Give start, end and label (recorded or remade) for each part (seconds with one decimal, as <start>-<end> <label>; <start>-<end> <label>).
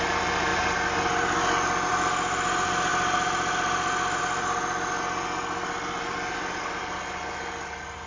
0.0-8.1 recorded